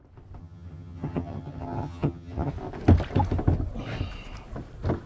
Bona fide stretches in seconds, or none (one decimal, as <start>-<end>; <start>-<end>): 0.0-0.4; 2.5-5.1